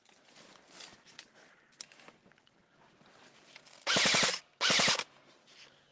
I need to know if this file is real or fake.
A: real